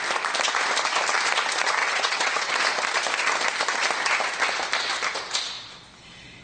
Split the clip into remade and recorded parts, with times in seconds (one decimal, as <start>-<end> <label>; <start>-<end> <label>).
0.0-1.8 recorded; 1.8-2.5 remade; 2.5-6.4 recorded

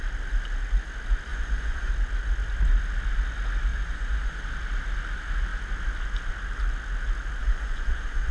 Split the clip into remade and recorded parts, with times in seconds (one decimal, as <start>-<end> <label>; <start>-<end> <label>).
0.0-1.3 recorded; 1.3-1.9 remade; 1.9-3.7 recorded; 3.7-4.4 remade; 4.4-7.4 recorded; 7.4-8.3 remade

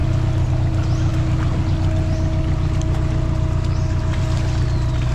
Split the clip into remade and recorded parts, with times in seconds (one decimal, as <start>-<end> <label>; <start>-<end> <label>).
0.0-5.1 recorded

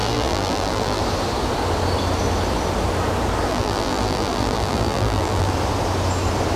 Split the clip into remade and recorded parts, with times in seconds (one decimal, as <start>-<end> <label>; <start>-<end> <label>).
0.0-1.0 remade; 1.0-3.5 recorded; 3.5-5.5 remade; 5.5-6.6 recorded

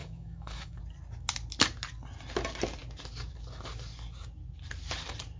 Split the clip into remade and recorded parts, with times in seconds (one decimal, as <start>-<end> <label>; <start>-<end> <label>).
0.0-0.8 remade; 0.8-5.4 recorded

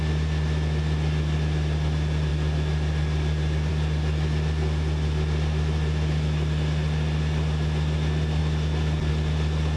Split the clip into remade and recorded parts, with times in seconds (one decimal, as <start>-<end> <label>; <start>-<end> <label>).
0.0-9.8 recorded

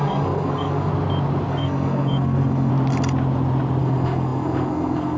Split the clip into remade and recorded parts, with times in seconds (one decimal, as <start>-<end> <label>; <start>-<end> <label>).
0.0-0.9 remade; 0.9-1.5 recorded; 1.5-2.7 remade; 2.7-3.8 recorded; 3.8-5.2 remade

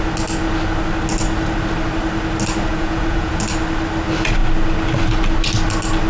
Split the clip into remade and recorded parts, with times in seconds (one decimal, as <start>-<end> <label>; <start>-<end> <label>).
0.0-2.7 recorded; 2.7-3.4 remade; 3.4-6.1 recorded